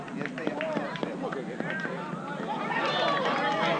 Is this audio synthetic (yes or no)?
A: no